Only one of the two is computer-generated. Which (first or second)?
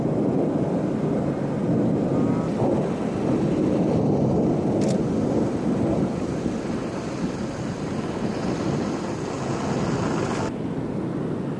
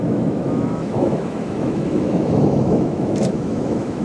second